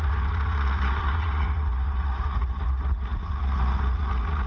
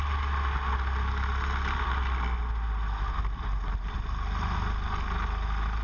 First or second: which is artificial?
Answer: first